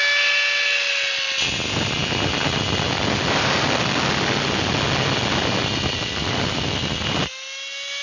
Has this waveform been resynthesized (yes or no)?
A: no